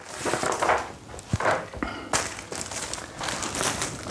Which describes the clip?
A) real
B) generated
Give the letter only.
A